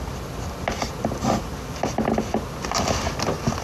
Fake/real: real